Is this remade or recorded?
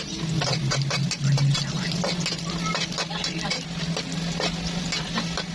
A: recorded